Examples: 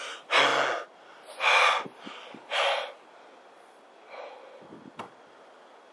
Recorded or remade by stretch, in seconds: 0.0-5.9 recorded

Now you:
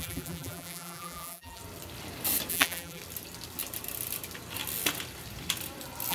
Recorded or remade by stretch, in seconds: 0.0-1.6 remade; 1.6-2.5 recorded; 2.5-3.0 remade; 3.0-6.1 recorded